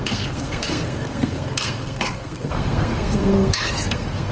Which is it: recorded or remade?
remade